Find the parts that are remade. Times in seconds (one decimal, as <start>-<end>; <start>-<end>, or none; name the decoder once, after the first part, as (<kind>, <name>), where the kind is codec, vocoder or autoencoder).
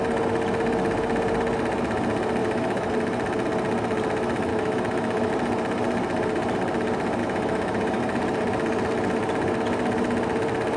2.4-2.9 (autoencoder, DAC-VAE); 4.5-5.3; 7.2-8.0